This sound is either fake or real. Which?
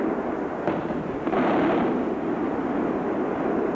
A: real